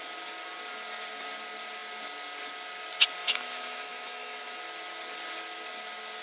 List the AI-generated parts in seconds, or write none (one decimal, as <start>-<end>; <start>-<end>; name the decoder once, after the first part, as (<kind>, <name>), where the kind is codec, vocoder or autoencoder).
3.2-4.6 (autoencoder, DAC-VAE)

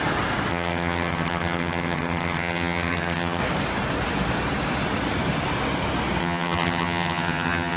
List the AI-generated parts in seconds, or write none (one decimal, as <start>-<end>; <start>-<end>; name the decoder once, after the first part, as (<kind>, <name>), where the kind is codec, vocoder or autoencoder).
0.5-3.4 (vocoder, HiFi-GAN); 6.2-7.8

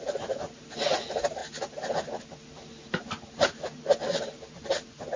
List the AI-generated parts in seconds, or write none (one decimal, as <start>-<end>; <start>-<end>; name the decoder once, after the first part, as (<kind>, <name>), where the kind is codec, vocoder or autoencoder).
none

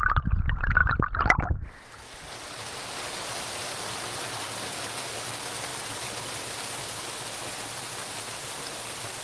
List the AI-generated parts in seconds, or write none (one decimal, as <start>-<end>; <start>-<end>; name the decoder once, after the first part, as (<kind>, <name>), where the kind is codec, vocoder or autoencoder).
0.8-1.4 (vocoder, BigVGAN v2)